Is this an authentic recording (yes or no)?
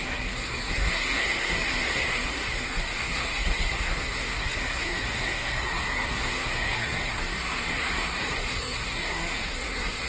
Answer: no